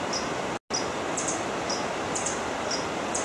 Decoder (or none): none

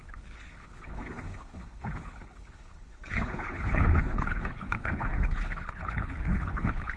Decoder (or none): codec, HILCodec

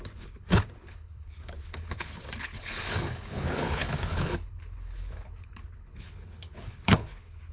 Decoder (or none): codec, HILCodec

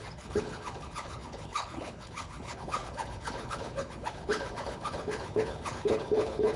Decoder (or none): codec, HILCodec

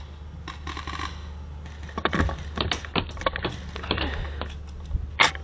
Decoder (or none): none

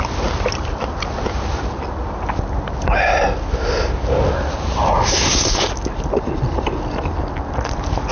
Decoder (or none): none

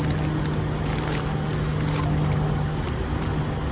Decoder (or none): none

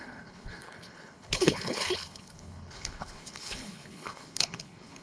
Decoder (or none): codec, HILCodec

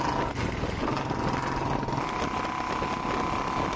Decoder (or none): none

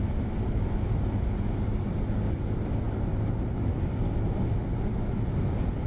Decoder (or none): none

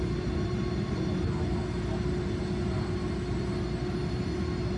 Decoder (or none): none